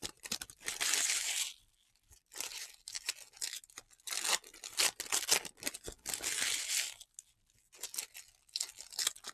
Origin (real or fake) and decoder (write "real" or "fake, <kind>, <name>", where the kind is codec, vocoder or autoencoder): real